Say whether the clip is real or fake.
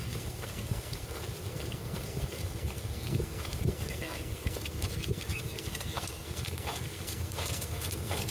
fake